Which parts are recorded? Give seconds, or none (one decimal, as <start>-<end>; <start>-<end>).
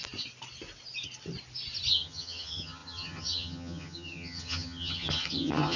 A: 0.0-1.9